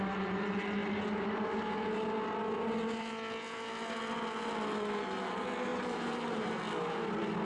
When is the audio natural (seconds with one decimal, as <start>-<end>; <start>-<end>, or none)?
0.0-5.7; 6.6-7.4